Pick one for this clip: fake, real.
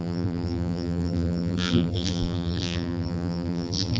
fake